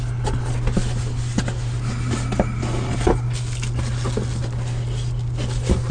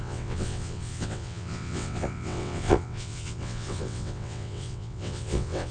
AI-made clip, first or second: second